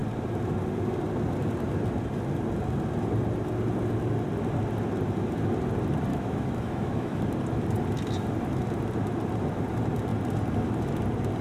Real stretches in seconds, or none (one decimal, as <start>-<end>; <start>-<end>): 0.0-6.1; 7.2-11.4